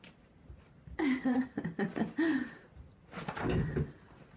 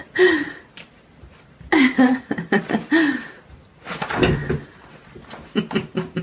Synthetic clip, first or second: first